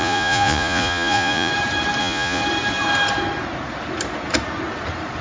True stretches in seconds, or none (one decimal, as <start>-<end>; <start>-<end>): 1.5-2.0; 2.4-5.2